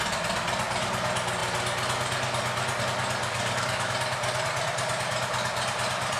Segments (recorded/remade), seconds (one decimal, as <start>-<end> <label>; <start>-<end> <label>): 0.0-3.2 recorded; 3.2-3.9 remade; 3.9-6.2 recorded